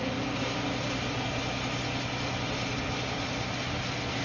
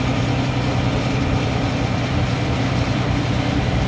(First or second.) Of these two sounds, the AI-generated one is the second